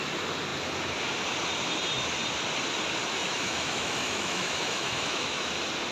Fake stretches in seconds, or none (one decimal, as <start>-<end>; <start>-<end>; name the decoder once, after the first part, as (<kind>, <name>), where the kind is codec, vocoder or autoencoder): 3.2-5.5 (autoencoder, DAC-VAE)